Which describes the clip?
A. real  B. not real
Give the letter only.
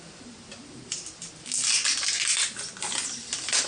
A